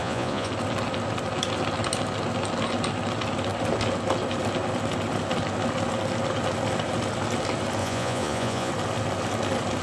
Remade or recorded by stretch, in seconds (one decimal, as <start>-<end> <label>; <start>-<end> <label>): 0.0-0.5 remade; 0.5-7.8 recorded; 7.8-8.7 remade; 8.7-9.8 recorded